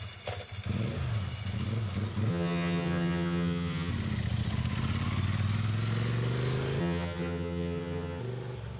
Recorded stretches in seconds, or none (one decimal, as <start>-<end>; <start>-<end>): 0.0-2.3; 3.9-6.8; 8.2-8.8

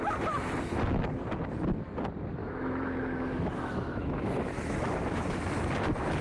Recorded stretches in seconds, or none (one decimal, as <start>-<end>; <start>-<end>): 0.0-2.4; 5.4-6.2